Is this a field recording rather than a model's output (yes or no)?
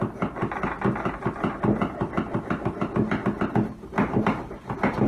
yes